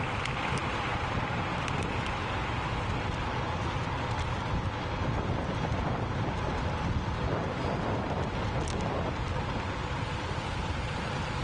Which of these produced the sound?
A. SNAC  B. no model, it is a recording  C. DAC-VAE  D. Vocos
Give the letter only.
B